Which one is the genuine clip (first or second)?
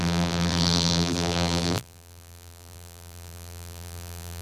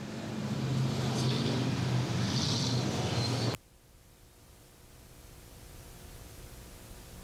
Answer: second